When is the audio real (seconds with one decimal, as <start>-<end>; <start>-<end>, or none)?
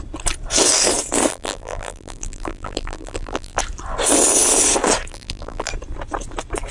0.0-1.3; 3.6-5.1; 5.7-6.7